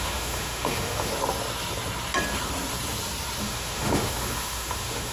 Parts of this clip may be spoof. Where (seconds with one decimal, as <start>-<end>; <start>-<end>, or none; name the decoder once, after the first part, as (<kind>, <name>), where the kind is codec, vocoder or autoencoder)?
0.0-1.1 (autoencoder, DAC-VAE); 3.4-5.1